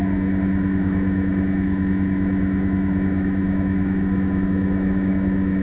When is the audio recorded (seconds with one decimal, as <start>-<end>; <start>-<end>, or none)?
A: none

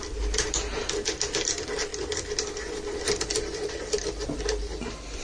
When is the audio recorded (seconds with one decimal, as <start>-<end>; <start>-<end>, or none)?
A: 0.0-5.2

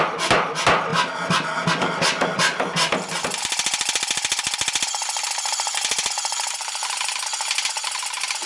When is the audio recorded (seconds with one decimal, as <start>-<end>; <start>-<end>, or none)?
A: 0.0-8.5

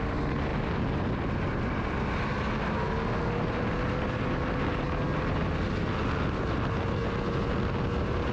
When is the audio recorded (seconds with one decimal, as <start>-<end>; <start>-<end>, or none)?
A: 0.0-8.3

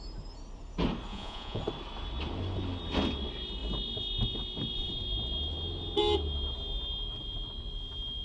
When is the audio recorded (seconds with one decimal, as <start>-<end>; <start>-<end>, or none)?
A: 0.0-1.1; 1.6-8.2

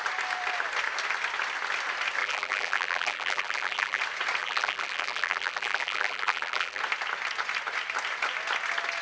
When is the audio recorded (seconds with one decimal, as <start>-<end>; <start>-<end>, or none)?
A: 0.0-2.2; 4.0-4.4; 6.8-9.0

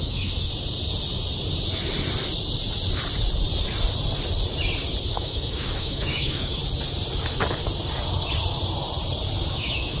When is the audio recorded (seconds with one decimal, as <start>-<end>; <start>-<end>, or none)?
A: 0.5-5.0; 6.6-9.5